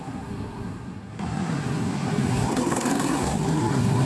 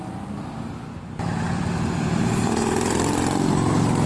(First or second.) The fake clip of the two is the first